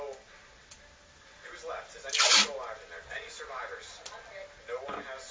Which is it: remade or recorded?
recorded